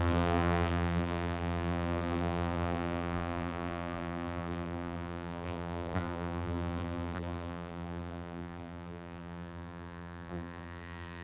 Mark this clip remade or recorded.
remade